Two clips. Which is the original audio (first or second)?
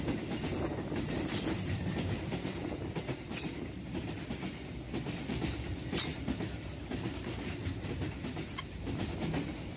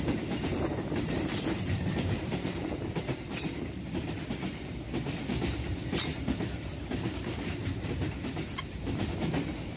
first